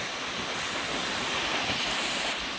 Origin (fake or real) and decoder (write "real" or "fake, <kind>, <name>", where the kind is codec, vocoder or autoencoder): real